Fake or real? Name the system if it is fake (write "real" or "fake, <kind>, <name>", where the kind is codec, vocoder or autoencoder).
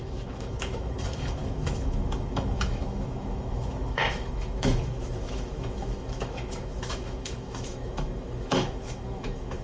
fake, autoencoder, DAC-VAE